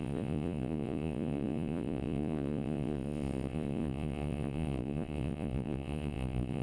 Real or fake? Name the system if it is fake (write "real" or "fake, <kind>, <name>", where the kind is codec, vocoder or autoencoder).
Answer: fake, vocoder, Vocos